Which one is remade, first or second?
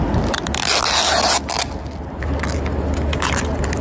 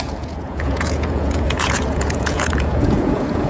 second